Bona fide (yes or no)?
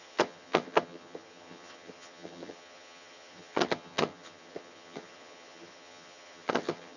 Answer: no